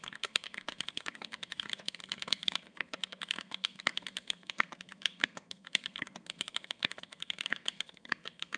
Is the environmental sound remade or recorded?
remade